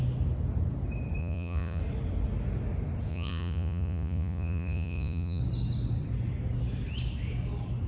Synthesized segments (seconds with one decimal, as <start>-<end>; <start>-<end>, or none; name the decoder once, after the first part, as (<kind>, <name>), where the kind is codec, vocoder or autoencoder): 1.2-1.8 (vocoder, Vocos); 3.1-5.4